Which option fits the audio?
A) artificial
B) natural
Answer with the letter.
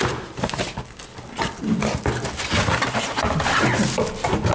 B